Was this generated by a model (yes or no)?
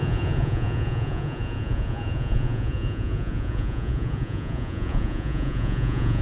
yes